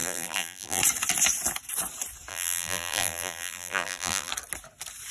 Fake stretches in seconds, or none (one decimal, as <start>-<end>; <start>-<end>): 0.0-0.8; 2.3-4.3